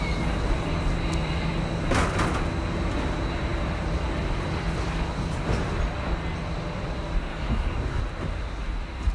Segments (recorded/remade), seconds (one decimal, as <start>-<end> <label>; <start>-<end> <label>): 0.0-7.3 recorded; 7.3-8.0 remade; 8.0-9.1 recorded